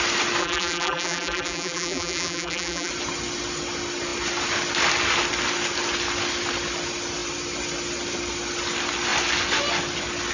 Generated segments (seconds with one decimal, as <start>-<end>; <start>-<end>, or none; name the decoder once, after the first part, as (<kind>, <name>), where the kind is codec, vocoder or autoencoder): 0.4-2.9 (vocoder, BigVGAN v2)